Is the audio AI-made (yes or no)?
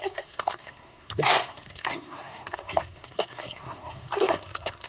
yes